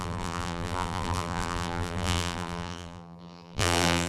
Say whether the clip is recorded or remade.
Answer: remade